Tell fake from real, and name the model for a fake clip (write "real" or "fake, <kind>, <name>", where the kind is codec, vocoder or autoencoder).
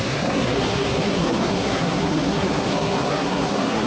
fake, codec, SNAC